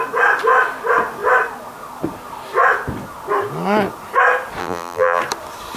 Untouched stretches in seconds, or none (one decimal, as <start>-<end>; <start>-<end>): 0.0-4.6; 5.2-5.8